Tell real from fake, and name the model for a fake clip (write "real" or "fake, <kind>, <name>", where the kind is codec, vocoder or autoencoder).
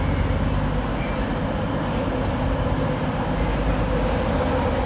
real